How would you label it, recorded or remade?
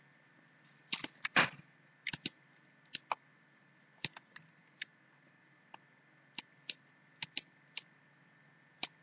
recorded